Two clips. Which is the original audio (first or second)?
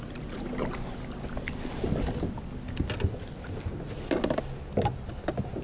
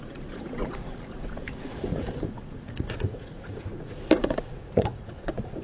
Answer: first